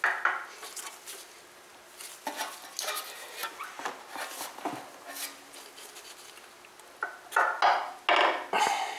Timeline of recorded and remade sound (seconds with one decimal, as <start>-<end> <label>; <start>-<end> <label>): 0.0-9.0 recorded